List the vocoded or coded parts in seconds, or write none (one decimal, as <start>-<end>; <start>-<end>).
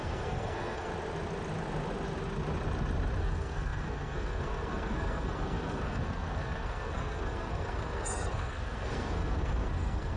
0.0-0.9; 3.2-10.2